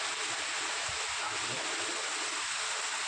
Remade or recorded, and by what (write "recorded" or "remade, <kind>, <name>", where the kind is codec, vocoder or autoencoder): recorded